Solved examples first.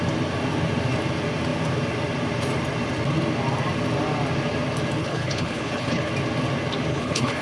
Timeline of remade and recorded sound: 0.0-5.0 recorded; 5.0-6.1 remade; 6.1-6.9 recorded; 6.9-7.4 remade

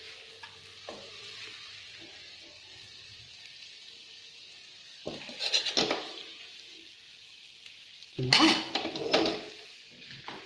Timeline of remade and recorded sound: 0.0-10.5 recorded

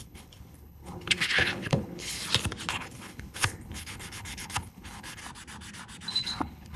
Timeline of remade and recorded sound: 0.0-2.2 remade; 2.2-2.7 recorded; 2.7-5.2 remade; 5.2-6.1 recorded; 6.1-6.8 remade

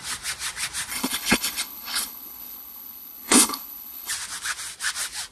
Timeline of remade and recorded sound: 0.0-0.9 recorded; 0.9-4.1 remade; 4.1-5.3 recorded

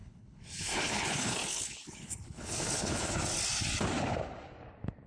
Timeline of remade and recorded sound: 0.0-3.1 remade; 3.1-5.1 recorded

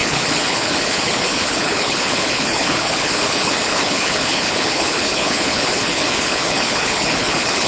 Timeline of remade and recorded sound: 0.0-7.7 remade